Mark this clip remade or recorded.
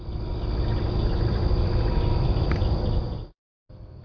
recorded